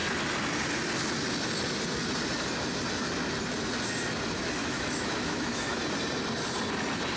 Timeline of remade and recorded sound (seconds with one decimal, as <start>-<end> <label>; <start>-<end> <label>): 0.0-4.6 recorded; 4.6-5.8 remade; 5.8-7.2 recorded

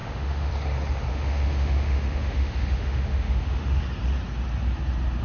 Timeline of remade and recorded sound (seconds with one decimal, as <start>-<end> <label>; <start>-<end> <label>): 0.0-0.5 remade; 0.5-1.1 recorded; 1.1-3.8 remade; 3.8-5.2 recorded